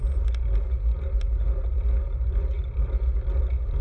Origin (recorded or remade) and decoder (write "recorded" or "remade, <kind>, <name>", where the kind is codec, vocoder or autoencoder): recorded